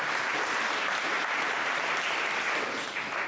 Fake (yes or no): no